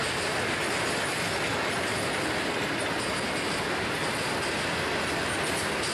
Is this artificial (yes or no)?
no